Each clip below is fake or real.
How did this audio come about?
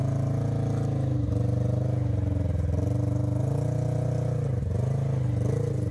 real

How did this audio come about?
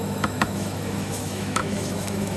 fake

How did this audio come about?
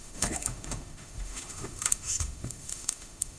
fake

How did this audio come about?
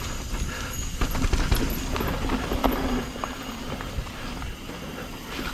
real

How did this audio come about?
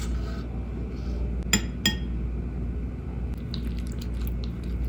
real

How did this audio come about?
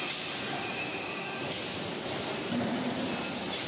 real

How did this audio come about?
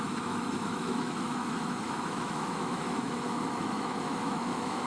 fake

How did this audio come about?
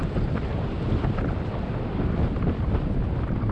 real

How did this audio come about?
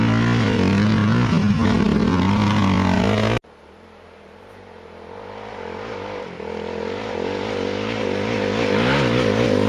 real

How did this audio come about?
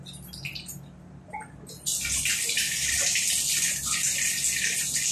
real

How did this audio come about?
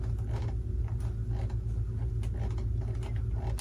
real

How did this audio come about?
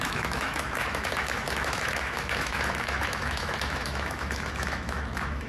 fake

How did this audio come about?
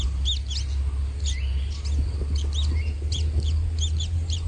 real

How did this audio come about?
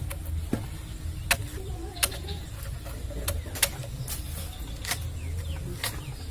real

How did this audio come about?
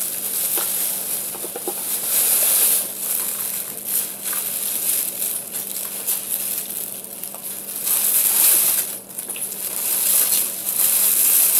real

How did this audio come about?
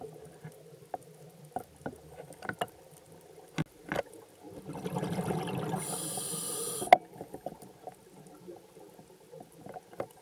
real